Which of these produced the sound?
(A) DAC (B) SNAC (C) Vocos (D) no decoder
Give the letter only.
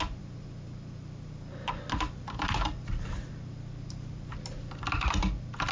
D